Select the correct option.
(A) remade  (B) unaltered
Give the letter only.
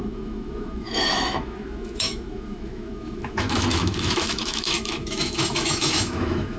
A